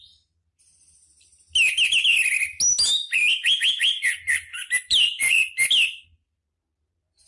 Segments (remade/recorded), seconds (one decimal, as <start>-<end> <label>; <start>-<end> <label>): 0.0-4.5 recorded; 4.5-5.5 remade; 5.5-7.3 recorded